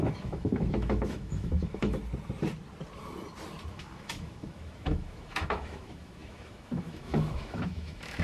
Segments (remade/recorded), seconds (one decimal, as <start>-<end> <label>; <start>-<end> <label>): 0.0-2.0 remade; 2.0-3.7 recorded; 3.7-8.2 remade